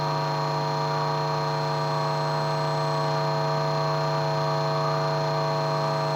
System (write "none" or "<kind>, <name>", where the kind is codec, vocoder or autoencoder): none